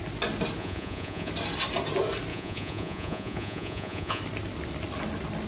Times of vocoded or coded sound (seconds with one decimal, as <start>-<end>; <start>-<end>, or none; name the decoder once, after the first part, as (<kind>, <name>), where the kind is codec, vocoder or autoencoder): 0.6-1.3 (vocoder, Vocos); 2.3-4.2